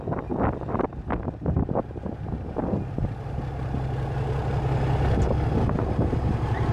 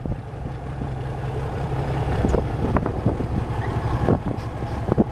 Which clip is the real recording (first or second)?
first